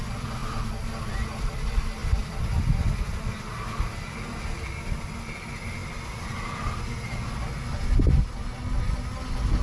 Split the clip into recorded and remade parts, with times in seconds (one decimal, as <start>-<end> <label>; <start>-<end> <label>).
0.0-9.6 recorded